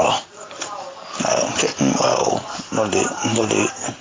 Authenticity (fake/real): real